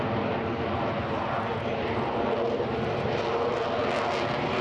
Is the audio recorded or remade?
recorded